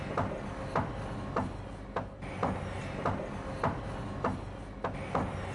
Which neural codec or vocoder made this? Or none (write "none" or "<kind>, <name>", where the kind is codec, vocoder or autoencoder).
none